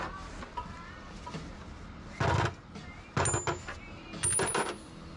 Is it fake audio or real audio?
real